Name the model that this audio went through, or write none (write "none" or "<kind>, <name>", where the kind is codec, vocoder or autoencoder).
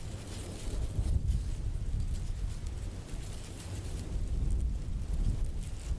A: none